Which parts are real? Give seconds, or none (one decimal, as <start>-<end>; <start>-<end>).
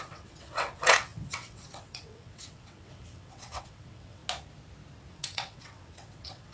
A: 4.2-5.1